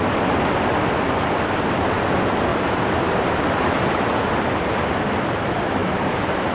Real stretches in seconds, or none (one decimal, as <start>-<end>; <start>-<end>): 0.0-2.5; 3.7-5.8